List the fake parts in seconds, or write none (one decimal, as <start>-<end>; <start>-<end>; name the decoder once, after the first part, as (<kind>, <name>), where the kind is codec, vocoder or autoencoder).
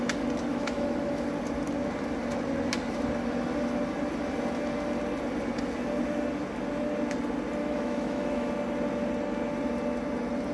0.5-1.3 (autoencoder, DAC-VAE); 7.6-8.5